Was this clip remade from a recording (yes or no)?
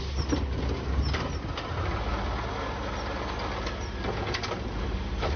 no